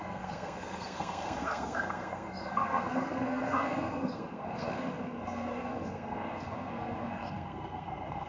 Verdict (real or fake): fake